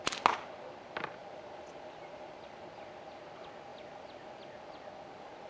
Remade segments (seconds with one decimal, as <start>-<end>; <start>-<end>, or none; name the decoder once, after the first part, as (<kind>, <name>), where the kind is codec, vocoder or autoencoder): none